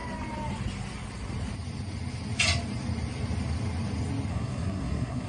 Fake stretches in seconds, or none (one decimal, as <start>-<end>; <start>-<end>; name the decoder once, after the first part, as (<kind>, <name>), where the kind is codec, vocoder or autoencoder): 4.3-5.3 (codec, SNAC)